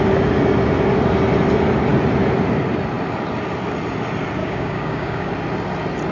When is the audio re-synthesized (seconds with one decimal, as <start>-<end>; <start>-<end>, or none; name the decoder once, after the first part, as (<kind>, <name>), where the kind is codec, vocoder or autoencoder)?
4.4-5.3 (codec, DAC)